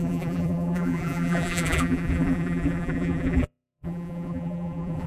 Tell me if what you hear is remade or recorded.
remade